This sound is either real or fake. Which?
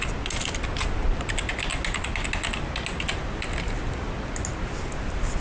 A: real